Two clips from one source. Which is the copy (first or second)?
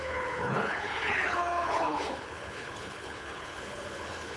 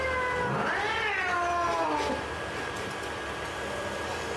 first